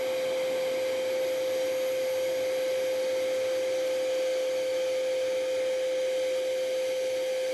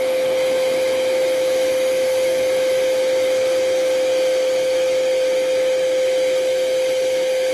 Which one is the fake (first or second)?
second